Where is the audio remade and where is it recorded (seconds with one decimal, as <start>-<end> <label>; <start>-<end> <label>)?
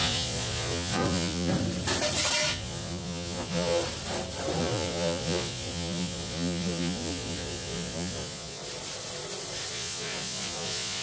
0.0-1.5 remade; 1.5-2.5 recorded; 2.5-3.8 remade; 3.8-4.6 recorded; 4.6-8.6 remade; 8.6-9.7 recorded; 9.7-11.0 remade